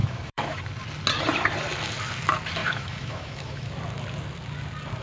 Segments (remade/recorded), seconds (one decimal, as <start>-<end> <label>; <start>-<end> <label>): 0.0-0.6 remade; 0.6-2.6 recorded; 2.6-3.7 remade; 3.7-5.0 recorded